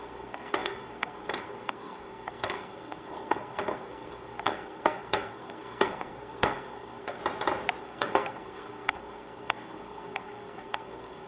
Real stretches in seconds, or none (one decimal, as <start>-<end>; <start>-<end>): 7.2-7.8